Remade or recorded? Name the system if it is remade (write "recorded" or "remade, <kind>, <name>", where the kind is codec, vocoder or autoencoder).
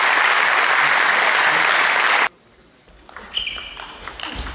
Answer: recorded